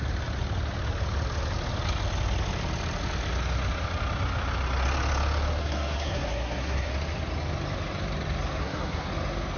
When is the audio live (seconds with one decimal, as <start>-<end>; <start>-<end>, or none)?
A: 0.0-5.6; 6.9-8.6; 9.1-9.6